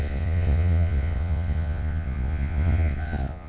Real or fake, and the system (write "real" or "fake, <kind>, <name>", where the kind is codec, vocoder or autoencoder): fake, vocoder, Vocos